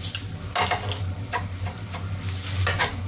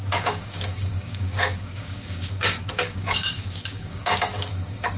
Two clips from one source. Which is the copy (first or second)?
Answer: second